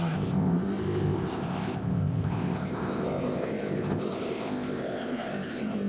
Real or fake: fake